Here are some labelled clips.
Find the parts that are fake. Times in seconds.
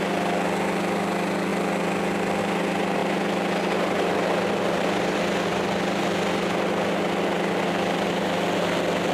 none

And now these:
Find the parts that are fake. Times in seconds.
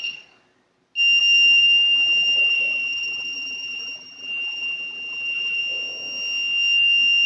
1.2-5.6 (vocoder, BigVGAN v2)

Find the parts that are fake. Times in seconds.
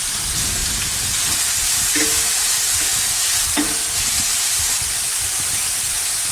2.9-5.2 (vocoder, BigVGAN v2)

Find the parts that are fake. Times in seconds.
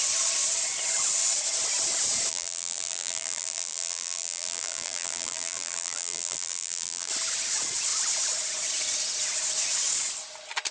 2.3-7.1 (vocoder, BigVGAN v2)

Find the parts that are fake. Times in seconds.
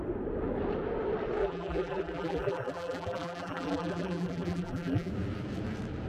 1.4-5.1 (vocoder, BigVGAN v2)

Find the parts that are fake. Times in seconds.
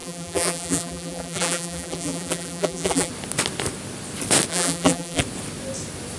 0.0-3.1 (vocoder, BigVGAN v2); 4.5-5.2